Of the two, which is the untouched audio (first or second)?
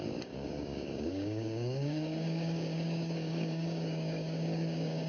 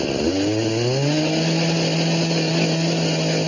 second